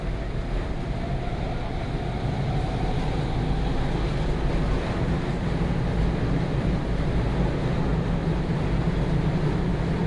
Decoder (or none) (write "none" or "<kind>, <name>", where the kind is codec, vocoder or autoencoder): none